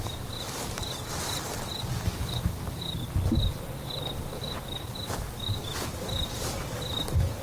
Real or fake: real